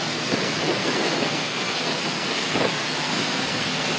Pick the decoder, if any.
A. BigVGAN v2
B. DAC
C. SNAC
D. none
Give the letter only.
C